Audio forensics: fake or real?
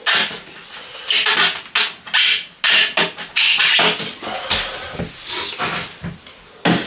real